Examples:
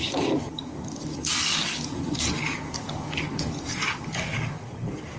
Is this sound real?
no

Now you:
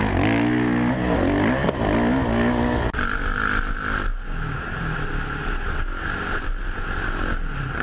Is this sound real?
yes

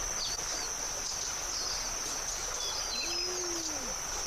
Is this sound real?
yes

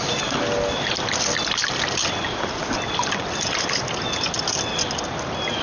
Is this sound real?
yes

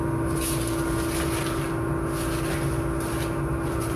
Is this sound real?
yes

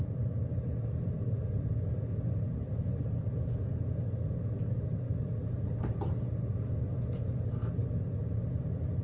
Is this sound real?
no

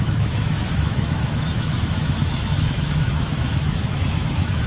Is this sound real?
no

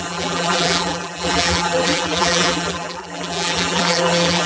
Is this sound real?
no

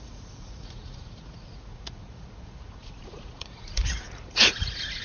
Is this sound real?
no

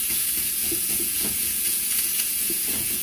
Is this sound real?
no